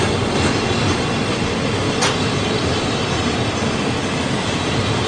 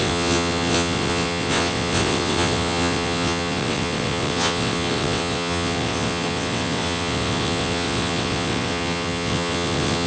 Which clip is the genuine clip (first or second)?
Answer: first